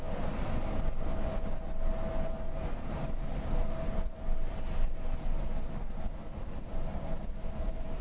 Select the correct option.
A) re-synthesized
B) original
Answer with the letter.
B